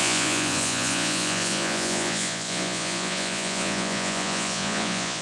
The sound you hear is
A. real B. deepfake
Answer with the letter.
B